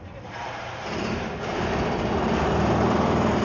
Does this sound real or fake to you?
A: real